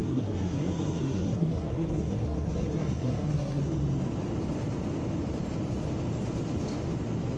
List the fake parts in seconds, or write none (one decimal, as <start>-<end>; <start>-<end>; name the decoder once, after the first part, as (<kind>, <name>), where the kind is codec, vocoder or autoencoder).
0.0-3.6 (codec, SNAC)